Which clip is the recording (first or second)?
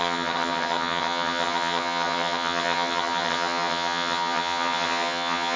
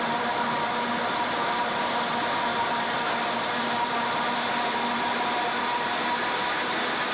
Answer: second